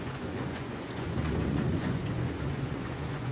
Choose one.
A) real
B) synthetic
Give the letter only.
B